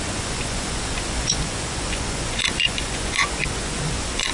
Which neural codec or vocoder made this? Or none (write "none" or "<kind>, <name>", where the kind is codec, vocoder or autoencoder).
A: vocoder, Vocos